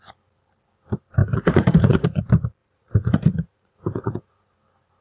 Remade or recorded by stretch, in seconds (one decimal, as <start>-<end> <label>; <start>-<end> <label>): 0.0-1.2 recorded; 1.2-2.2 remade; 2.2-2.6 recorded; 2.6-4.5 remade; 4.5-5.0 recorded